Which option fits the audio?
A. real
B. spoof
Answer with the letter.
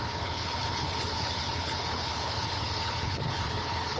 B